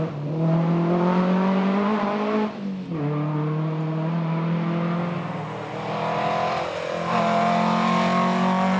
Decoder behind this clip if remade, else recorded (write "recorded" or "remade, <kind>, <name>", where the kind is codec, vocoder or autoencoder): recorded